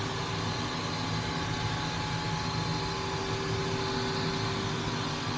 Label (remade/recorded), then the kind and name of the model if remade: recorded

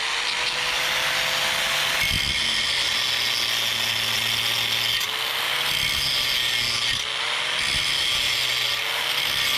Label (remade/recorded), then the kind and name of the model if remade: recorded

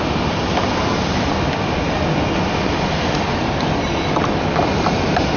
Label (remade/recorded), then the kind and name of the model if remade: recorded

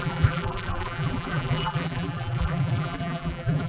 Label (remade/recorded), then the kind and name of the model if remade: remade, vocoder, BigVGAN v2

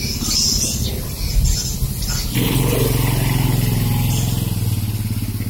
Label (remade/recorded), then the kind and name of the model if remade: recorded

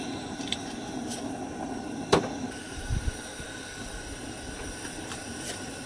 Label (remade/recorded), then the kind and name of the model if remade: recorded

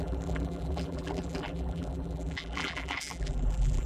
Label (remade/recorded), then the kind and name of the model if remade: remade, vocoder, BigVGAN v2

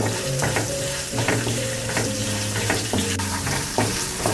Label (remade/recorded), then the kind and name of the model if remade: remade, vocoder, BigVGAN v2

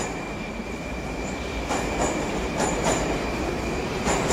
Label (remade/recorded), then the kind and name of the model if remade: remade, vocoder, BigVGAN v2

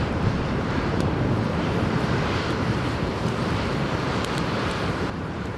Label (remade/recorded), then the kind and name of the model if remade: remade, vocoder, BigVGAN v2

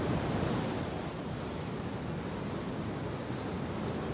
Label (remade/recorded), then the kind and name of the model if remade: recorded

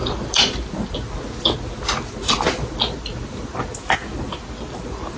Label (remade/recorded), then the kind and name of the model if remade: recorded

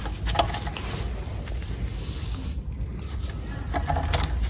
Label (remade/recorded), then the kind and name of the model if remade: recorded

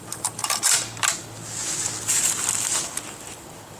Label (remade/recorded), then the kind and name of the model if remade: recorded